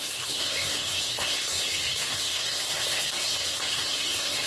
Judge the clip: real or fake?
fake